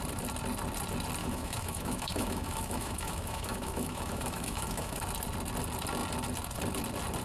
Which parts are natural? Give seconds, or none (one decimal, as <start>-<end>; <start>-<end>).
0.0-1.2; 5.0-7.2